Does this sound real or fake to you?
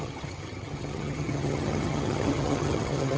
fake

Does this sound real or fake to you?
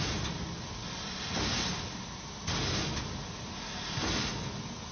real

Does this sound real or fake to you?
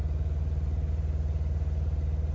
real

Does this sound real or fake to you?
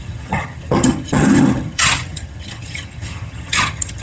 fake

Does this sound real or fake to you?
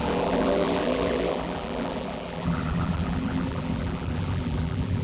fake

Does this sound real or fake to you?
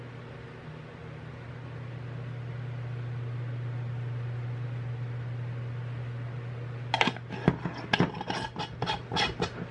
real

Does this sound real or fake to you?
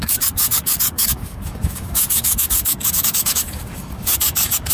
fake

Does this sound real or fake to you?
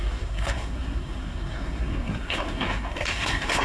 fake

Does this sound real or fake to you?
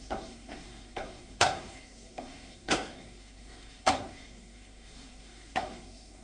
fake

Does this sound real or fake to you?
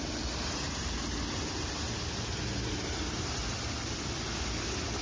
real